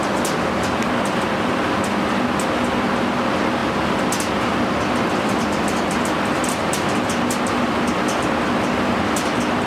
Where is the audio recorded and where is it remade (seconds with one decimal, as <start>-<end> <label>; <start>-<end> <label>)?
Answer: 0.0-9.7 recorded